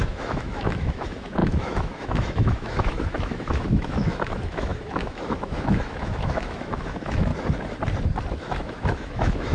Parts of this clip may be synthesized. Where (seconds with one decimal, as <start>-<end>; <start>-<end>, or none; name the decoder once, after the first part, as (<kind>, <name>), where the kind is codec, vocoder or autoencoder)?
0.0-7.3 (autoencoder, DAC-VAE); 8.3-9.5